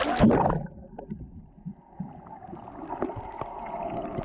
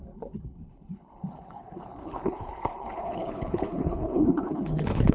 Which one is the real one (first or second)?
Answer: first